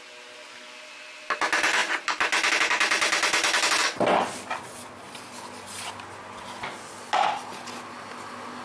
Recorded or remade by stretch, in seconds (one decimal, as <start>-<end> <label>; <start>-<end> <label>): 0.0-8.6 recorded